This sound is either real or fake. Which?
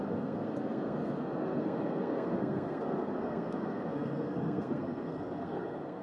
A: fake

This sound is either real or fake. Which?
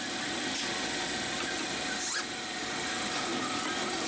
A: real